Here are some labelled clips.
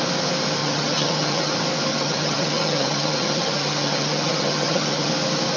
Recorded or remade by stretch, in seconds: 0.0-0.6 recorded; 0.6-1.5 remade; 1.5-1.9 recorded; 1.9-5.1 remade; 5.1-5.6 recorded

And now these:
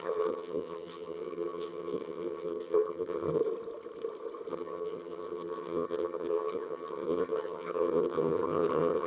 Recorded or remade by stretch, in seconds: 0.0-3.4 remade; 3.4-4.5 recorded; 4.5-9.1 remade

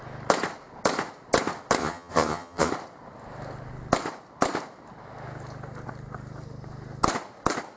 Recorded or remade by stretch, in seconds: 0.0-1.8 recorded; 1.8-2.7 remade; 2.7-7.8 recorded

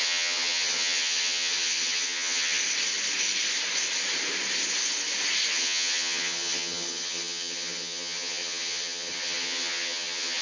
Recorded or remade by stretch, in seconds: 0.0-2.6 remade; 2.6-5.5 recorded; 5.5-10.4 remade

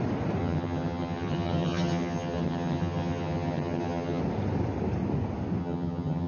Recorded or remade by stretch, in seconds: 0.0-0.4 recorded; 0.4-4.2 remade; 4.2-5.6 recorded; 5.6-6.3 remade

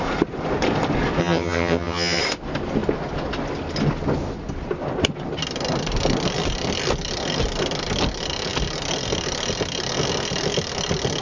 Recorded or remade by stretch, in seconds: 0.0-1.2 recorded; 1.2-2.2 remade; 2.2-11.2 recorded